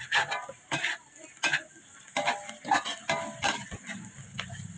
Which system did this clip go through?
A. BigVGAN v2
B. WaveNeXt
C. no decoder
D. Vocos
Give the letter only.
C